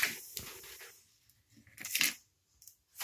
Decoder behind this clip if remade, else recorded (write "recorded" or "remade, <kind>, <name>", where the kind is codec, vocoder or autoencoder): recorded